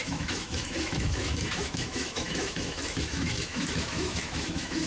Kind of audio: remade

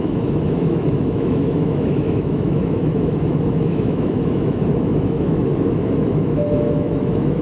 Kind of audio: remade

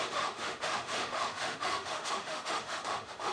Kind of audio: remade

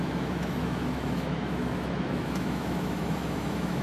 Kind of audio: remade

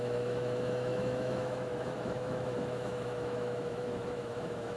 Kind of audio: remade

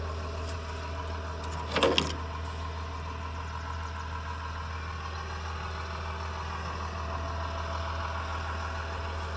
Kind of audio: recorded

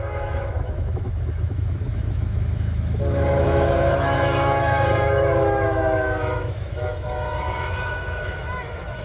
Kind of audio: remade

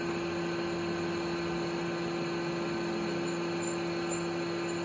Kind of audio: recorded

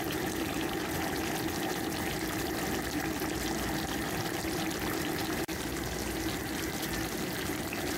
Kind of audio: recorded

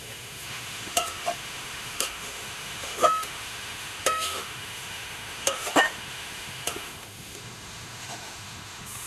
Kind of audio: remade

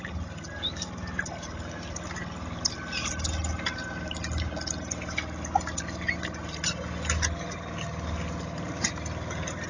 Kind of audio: recorded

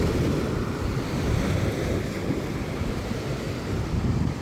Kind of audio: recorded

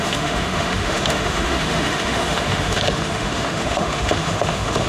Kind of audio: remade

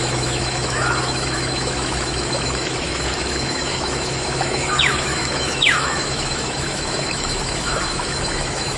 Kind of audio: remade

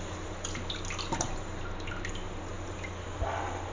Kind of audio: recorded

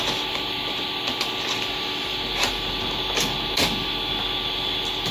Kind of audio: recorded